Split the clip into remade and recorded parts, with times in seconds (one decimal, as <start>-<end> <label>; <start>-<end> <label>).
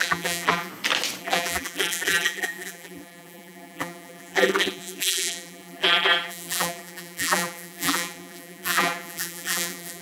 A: 0.0-0.7 remade; 0.7-1.2 recorded; 1.2-10.0 remade